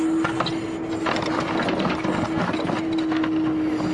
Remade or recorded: recorded